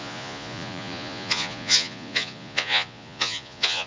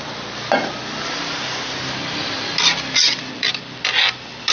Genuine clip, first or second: second